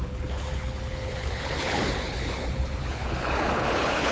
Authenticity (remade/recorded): remade